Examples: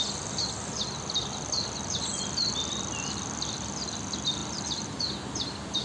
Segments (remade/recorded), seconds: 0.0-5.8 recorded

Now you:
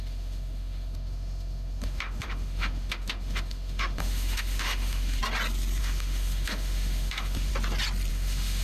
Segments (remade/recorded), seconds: 0.0-5.2 remade; 5.2-5.8 recorded; 5.8-7.5 remade; 7.5-8.1 recorded; 8.1-8.6 remade

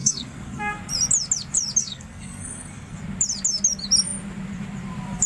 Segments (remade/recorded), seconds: 0.0-0.8 remade; 0.8-1.8 recorded; 1.8-3.0 remade; 3.0-5.3 recorded

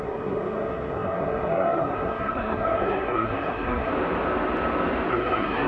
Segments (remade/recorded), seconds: 0.0-3.9 remade; 3.9-5.1 recorded; 5.1-5.7 remade

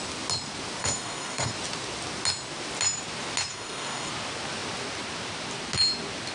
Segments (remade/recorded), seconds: 0.0-0.8 recorded; 0.8-1.5 remade; 1.5-3.5 recorded; 3.5-4.1 remade; 4.1-6.3 recorded

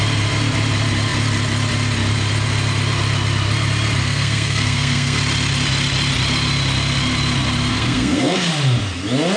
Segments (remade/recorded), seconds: 0.0-4.0 recorded; 4.0-5.2 remade; 5.2-7.7 recorded; 7.7-8.5 remade; 8.5-9.4 recorded

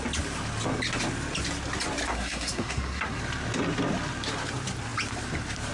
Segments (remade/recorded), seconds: 0.0-2.1 recorded; 2.1-3.2 remade; 3.2-5.7 recorded

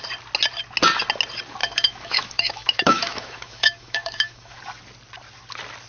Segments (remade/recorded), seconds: 0.0-1.6 recorded; 1.6-4.6 remade; 4.6-5.9 recorded